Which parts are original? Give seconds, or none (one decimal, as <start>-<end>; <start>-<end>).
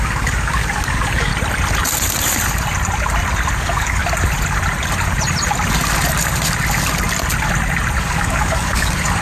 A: 1.3-3.6; 4.0-8.0